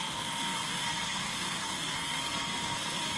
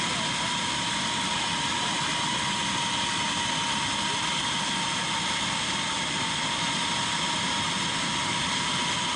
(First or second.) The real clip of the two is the second